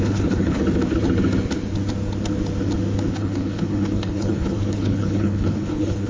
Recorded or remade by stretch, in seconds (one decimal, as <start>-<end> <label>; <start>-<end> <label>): 0.0-0.6 remade; 0.6-3.1 recorded; 3.1-6.1 remade